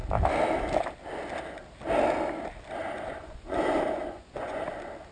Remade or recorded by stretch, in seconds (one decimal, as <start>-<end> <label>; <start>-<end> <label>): 0.0-2.8 recorded; 2.8-4.6 remade; 4.6-5.1 recorded